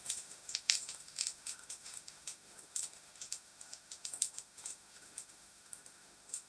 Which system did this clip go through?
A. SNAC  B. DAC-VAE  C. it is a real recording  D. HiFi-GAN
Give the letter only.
B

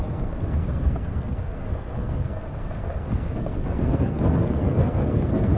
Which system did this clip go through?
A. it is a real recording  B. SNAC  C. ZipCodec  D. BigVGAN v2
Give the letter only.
B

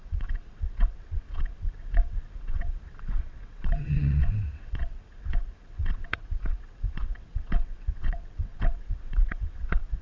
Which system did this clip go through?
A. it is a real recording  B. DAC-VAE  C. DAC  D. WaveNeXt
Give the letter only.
D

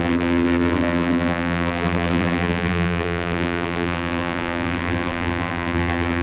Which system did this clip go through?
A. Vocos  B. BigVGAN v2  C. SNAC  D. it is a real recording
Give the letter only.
B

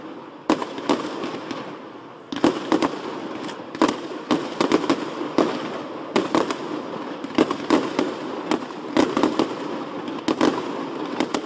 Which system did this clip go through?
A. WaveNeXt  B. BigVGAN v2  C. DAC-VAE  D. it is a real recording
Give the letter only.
D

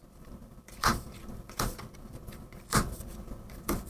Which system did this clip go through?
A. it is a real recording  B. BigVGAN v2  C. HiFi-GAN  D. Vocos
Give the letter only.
B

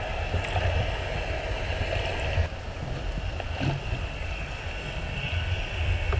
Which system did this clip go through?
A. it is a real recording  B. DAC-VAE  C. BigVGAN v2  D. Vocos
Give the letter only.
A